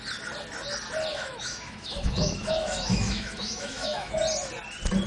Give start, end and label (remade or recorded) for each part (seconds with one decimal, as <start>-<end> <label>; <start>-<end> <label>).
0.0-1.1 recorded; 1.1-4.2 remade; 4.2-5.1 recorded